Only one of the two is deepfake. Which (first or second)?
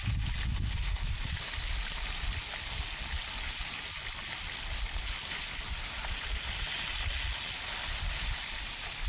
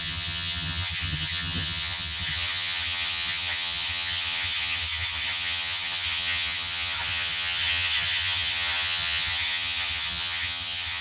second